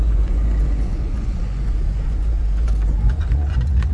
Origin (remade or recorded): remade